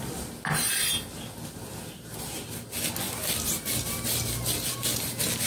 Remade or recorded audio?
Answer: recorded